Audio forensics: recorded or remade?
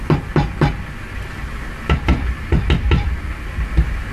recorded